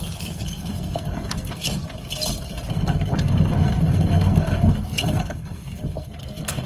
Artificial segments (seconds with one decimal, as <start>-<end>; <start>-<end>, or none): 0.0-1.8; 2.7-6.7